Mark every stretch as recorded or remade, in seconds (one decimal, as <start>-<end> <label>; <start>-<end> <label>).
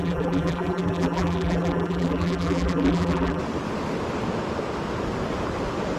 0.0-3.4 remade; 3.4-6.0 recorded